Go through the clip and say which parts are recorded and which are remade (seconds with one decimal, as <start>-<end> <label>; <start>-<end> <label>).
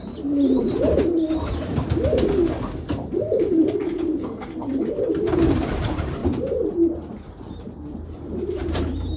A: 0.0-0.6 remade; 0.6-2.9 recorded; 2.9-9.2 remade